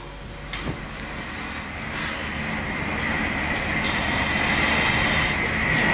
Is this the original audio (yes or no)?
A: yes